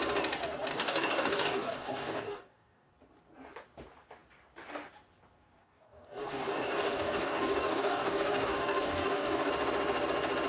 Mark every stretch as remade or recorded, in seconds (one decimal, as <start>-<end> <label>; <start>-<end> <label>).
0.0-0.7 recorded; 0.7-2.9 remade; 2.9-5.6 recorded; 5.6-9.5 remade; 9.5-10.5 recorded